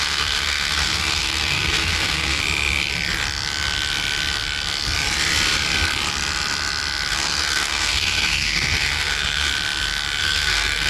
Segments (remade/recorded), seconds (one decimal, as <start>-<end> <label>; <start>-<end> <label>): 0.0-2.4 remade; 2.4-7.1 recorded; 7.1-9.5 remade; 9.5-10.2 recorded; 10.2-10.9 remade